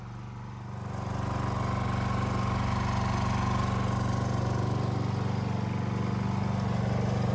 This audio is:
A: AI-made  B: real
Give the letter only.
B